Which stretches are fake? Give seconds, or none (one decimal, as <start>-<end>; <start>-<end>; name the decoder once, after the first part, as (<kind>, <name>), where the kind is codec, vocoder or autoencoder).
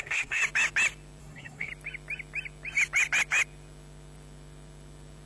0.0-0.4 (codec, SNAC); 1.2-1.7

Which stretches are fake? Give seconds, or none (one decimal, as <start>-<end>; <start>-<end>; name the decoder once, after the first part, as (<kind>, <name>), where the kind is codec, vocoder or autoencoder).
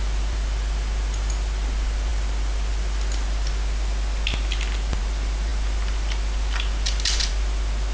none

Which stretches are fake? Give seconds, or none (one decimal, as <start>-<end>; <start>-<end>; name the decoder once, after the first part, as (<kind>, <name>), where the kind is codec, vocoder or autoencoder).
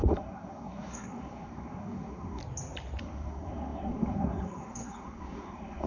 0.0-2.4 (codec, SNAC); 3.0-5.9